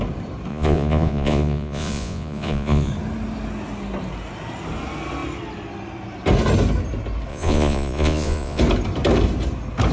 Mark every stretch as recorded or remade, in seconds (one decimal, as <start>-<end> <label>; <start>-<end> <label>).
0.0-0.5 recorded; 0.5-2.9 remade; 2.9-7.3 recorded; 7.3-8.6 remade; 8.6-9.9 recorded